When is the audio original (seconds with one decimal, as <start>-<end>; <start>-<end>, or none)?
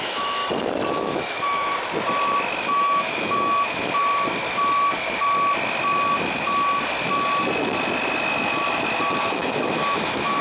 0.4-0.9; 1.7-2.6; 4.0-9.2